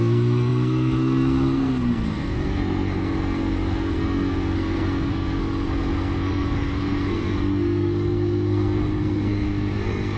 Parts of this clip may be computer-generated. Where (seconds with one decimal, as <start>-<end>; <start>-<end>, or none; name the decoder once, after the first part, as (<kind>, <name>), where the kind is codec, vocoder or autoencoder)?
0.0-10.2 (codec, SNAC)